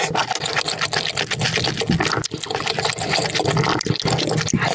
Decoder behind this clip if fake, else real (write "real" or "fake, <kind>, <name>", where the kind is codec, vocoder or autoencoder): real